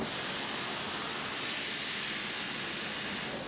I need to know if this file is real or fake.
real